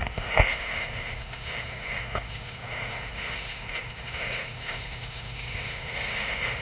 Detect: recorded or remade remade